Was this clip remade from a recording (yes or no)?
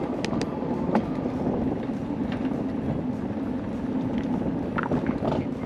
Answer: no